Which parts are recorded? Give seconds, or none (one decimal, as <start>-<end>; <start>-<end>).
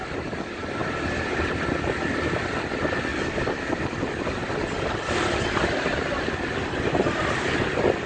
0.0-8.1